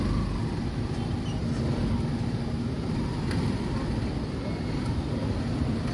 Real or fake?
real